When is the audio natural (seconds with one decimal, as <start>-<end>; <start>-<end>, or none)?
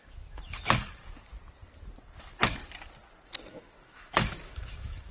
1.3-3.5